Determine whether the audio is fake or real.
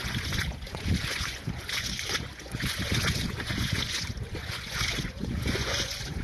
fake